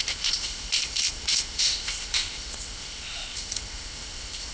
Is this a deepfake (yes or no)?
yes